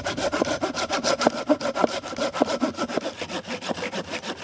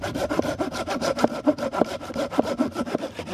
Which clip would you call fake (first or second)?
second